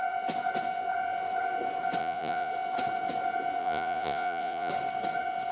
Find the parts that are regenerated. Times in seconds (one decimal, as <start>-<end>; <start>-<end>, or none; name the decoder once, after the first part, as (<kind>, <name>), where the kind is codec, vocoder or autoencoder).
2.0-2.5 (vocoder, Vocos); 3.6-4.7